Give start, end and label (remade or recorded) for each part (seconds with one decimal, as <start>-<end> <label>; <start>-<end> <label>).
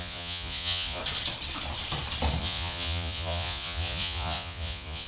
0.0-1.0 remade; 1.0-2.4 recorded; 2.4-5.1 remade